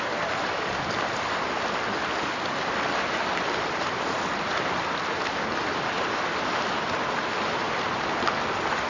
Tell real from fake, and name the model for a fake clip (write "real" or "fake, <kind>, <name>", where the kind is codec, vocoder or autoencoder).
real